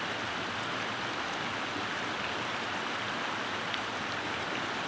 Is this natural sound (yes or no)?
yes